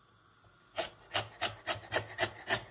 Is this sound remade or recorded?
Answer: recorded